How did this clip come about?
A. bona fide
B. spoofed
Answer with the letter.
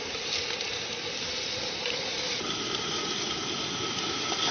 A